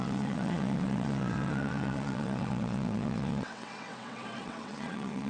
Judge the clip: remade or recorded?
remade